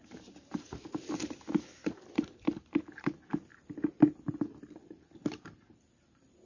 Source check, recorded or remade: recorded